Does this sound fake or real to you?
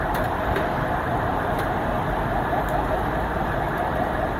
real